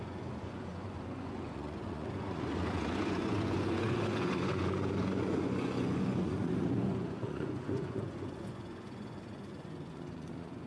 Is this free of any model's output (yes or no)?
no